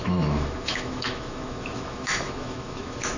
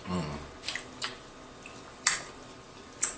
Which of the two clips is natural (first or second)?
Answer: second